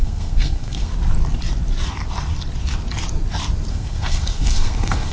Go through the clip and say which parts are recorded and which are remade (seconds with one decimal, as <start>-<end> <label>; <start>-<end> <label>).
0.0-0.9 remade; 0.9-3.7 recorded; 3.7-5.1 remade